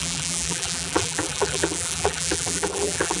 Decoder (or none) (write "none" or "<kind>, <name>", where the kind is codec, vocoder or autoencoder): vocoder, BigVGAN v2